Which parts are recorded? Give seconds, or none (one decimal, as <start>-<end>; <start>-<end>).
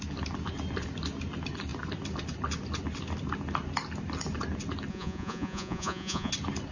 0.0-4.9; 6.3-6.7